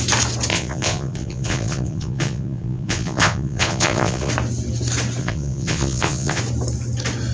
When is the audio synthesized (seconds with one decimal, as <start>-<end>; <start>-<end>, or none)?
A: 0.5-4.3; 5.2-6.4